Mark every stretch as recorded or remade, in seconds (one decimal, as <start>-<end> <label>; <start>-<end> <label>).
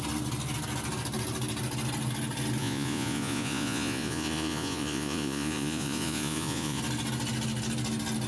0.0-2.6 recorded; 2.6-6.8 remade; 6.8-8.3 recorded